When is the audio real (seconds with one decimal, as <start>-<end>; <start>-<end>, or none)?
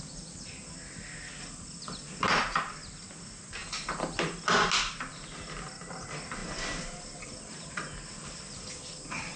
0.0-9.4